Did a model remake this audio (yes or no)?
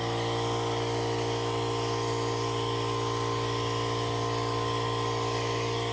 no